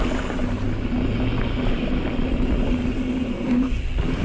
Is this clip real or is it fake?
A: real